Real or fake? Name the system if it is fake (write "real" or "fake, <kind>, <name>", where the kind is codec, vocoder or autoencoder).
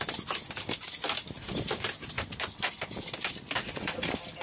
real